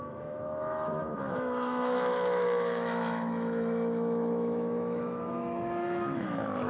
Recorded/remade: remade